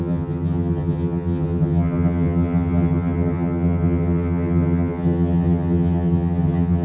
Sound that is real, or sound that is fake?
fake